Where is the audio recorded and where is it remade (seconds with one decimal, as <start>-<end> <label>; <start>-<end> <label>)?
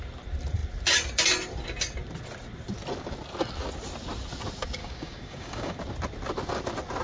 0.0-4.8 recorded; 4.8-5.8 remade; 5.8-7.0 recorded